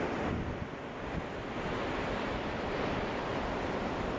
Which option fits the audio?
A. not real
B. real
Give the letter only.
B